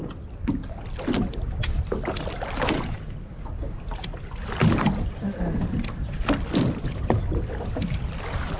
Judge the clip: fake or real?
real